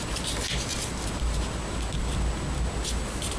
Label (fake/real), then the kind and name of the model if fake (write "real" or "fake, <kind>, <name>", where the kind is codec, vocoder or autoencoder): real